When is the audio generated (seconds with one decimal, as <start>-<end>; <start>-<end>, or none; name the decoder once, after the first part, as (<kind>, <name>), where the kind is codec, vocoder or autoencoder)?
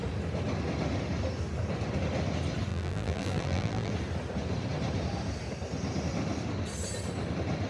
2.7-3.9 (vocoder, BigVGAN v2)